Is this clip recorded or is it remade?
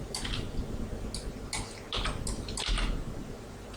recorded